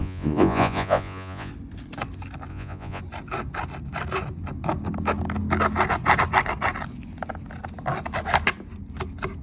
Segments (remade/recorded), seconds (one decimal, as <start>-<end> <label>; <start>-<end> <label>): 0.0-1.5 remade; 1.5-2.5 recorded; 2.5-3.0 remade; 3.0-9.4 recorded